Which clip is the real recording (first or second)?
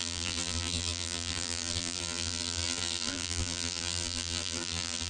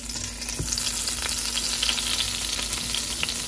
second